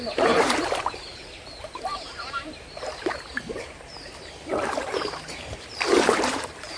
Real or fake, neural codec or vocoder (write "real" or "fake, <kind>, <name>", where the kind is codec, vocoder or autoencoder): fake, vocoder, BigVGAN v2